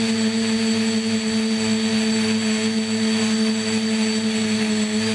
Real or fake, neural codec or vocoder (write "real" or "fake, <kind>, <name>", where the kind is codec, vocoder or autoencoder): real